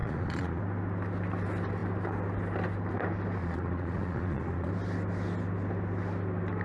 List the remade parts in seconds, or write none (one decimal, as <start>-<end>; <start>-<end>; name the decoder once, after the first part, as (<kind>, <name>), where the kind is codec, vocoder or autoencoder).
0.0-0.6 (vocoder, Vocos); 3.4-4.7